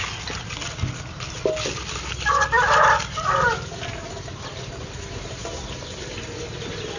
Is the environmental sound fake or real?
real